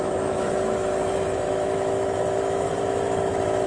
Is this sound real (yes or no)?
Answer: no